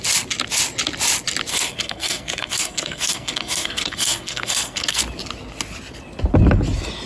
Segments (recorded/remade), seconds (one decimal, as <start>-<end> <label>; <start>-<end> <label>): 0.0-1.5 recorded; 1.5-5.0 remade; 5.0-7.1 recorded